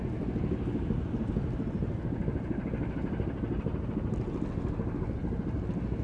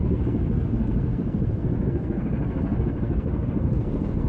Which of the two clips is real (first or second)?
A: first